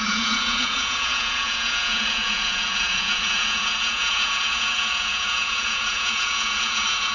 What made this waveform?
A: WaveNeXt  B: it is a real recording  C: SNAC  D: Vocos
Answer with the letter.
D